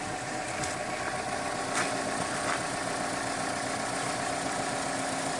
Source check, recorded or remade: recorded